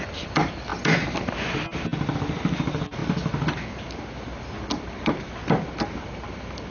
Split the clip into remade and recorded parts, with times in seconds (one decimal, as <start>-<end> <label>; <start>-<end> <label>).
0.0-6.7 recorded